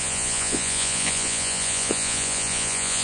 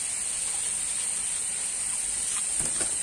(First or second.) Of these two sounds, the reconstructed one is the first